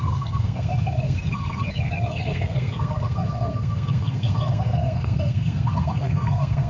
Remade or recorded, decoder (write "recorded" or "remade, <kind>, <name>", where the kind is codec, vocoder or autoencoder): remade, codec, SNAC